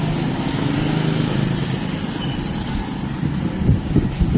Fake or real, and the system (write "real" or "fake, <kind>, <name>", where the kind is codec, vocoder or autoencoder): real